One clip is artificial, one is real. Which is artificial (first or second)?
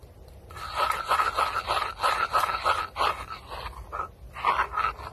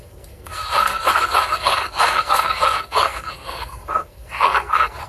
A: second